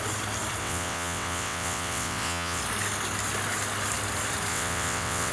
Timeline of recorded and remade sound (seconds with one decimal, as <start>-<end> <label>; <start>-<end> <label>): 0.0-0.6 recorded; 0.6-2.6 remade; 2.6-4.5 recorded; 4.5-5.3 remade